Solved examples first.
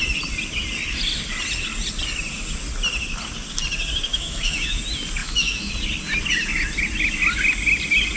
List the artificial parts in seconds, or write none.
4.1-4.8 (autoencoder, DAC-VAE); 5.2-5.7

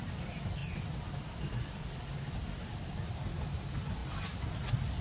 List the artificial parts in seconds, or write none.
none